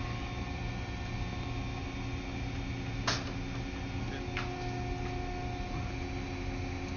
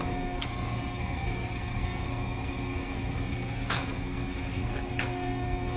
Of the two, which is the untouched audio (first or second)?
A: first